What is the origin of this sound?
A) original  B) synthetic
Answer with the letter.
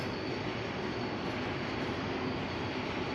A